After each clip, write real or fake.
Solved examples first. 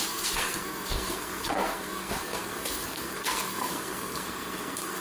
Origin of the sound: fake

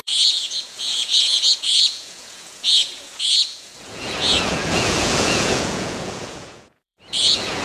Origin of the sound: fake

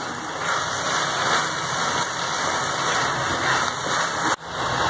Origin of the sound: real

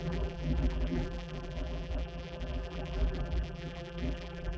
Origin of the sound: fake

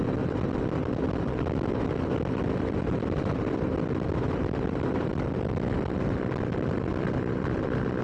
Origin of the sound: real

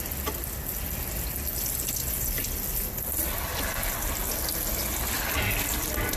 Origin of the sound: real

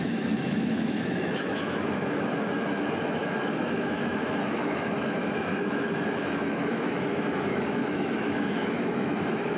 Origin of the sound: fake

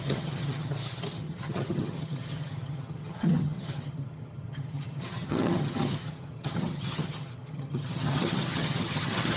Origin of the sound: fake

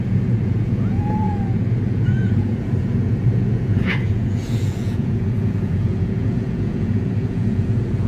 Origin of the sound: fake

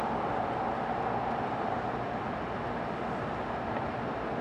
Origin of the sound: real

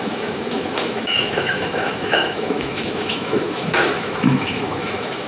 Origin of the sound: fake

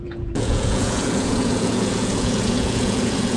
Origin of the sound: fake